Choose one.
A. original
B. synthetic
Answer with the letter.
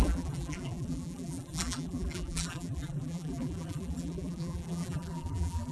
B